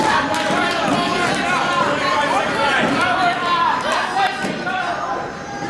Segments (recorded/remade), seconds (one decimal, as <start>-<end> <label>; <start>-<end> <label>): 0.0-3.4 recorded; 3.4-5.0 remade; 5.0-5.7 recorded